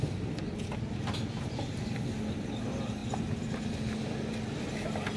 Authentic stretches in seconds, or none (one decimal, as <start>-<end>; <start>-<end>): 0.0-5.2